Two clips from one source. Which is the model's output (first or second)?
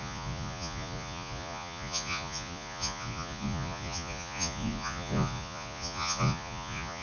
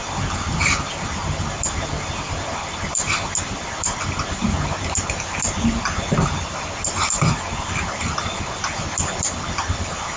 first